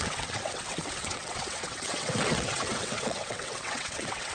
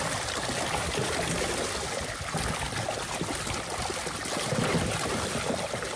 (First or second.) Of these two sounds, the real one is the second